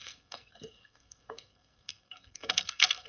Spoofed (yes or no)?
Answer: yes